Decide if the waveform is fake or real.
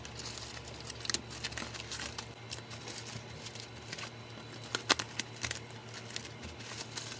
real